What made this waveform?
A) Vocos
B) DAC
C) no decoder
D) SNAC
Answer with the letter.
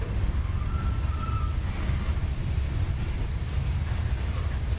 C